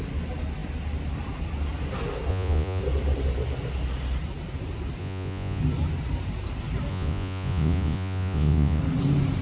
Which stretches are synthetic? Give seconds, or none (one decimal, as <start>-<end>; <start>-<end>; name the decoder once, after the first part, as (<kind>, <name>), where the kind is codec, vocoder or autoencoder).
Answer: 2.3-2.8 (vocoder, Vocos); 5.0-5.6; 6.9-8.8